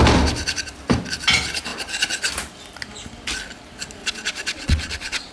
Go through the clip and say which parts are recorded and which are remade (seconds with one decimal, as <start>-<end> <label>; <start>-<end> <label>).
0.0-4.0 recorded; 4.0-5.3 remade